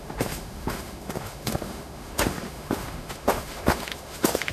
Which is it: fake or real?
fake